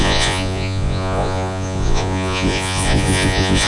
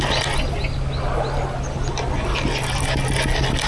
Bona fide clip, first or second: second